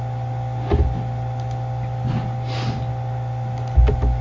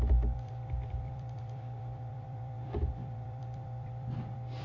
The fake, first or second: second